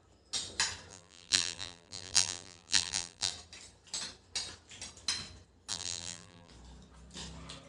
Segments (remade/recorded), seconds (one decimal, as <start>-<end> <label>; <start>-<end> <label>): 0.0-0.9 recorded; 0.9-3.3 remade; 3.3-5.7 recorded; 5.7-6.5 remade; 6.5-7.7 recorded